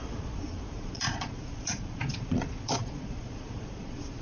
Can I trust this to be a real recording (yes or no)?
no